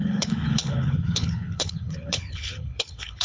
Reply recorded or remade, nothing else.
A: remade